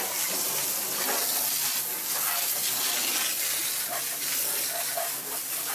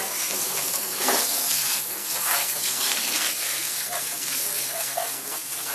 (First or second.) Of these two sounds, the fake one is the second